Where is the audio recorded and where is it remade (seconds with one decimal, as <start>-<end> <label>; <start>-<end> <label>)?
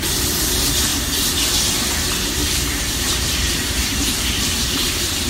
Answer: 0.0-2.4 recorded; 2.4-5.3 remade